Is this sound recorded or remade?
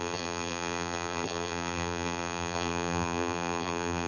remade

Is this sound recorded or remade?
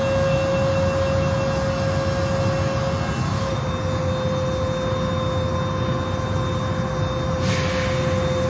recorded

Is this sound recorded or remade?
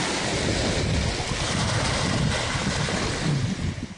recorded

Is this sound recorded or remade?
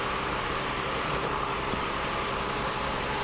remade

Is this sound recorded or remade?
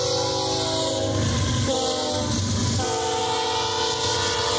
recorded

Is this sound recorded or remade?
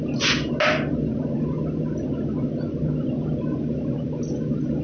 recorded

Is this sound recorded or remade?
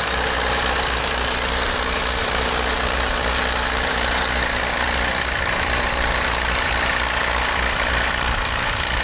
remade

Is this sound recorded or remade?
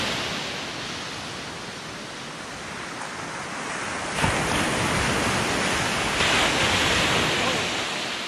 recorded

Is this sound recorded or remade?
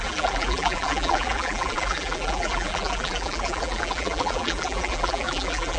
remade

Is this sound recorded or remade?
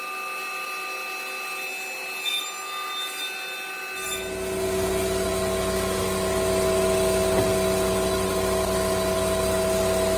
recorded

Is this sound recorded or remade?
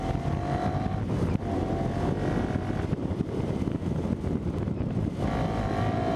recorded